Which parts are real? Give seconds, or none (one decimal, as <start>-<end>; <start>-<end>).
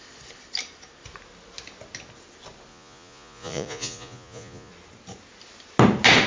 0.0-2.7; 4.7-6.3